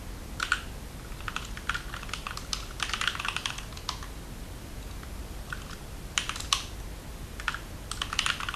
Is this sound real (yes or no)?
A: yes